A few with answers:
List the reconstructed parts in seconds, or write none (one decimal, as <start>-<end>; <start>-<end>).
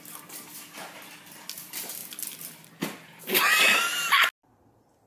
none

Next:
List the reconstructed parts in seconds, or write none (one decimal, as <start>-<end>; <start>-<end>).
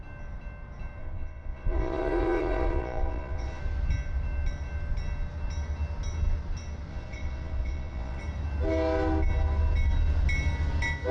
1.0-3.6; 6.9-8.2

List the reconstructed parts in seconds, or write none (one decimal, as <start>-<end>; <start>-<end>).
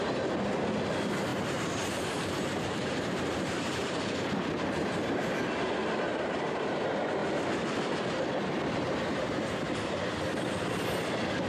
1.3-4.3; 6.1-6.8